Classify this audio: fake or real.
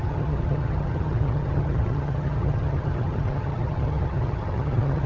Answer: fake